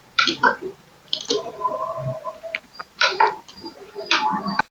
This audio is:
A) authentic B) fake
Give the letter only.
B